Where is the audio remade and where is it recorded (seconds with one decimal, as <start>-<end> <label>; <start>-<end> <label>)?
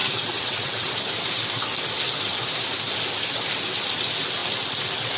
0.0-0.9 remade; 0.9-5.2 recorded